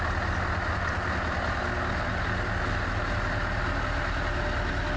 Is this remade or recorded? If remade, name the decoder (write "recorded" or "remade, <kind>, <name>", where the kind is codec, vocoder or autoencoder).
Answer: recorded